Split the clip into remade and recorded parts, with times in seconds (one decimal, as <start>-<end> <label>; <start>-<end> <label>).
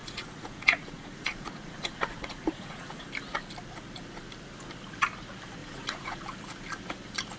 0.0-3.0 remade; 3.0-5.6 recorded; 5.6-6.2 remade; 6.2-7.4 recorded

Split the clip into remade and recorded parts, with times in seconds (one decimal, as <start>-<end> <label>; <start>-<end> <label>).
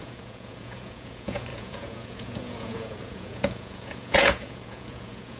0.0-5.4 remade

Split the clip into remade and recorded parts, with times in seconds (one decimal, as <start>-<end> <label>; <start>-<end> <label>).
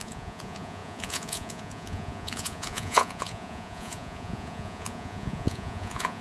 0.0-6.2 remade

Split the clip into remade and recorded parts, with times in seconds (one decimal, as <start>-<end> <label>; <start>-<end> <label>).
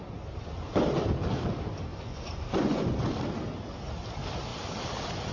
0.0-1.9 recorded; 1.9-3.1 remade; 3.1-5.3 recorded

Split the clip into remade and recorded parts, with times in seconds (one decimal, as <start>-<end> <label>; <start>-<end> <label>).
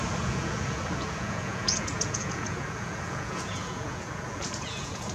0.0-5.1 remade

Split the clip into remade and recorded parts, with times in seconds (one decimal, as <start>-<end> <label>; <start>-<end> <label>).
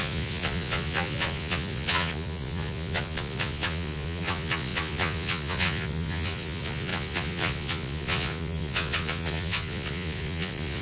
0.0-10.8 remade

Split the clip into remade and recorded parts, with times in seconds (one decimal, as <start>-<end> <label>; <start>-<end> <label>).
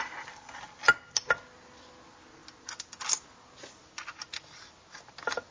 0.0-5.5 recorded